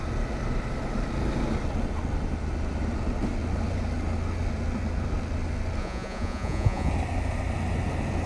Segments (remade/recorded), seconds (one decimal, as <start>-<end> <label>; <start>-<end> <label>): 0.0-5.8 recorded; 5.8-6.9 remade; 6.9-8.3 recorded